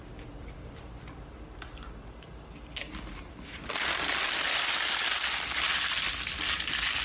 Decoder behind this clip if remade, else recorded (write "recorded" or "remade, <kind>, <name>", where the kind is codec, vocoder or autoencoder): recorded